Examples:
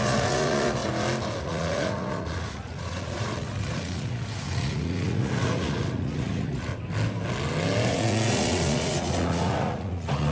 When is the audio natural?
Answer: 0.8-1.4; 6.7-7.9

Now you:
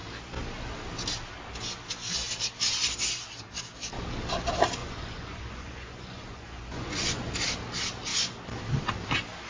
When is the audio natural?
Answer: 0.0-4.8; 7.3-9.5